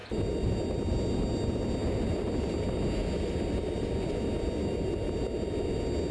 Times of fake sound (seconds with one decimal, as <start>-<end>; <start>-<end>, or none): none